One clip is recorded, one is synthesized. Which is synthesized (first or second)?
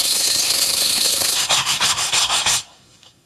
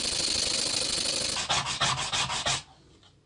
first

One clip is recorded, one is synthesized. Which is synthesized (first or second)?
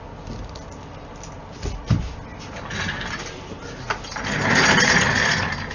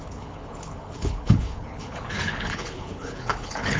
second